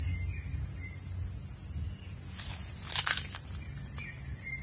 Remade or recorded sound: recorded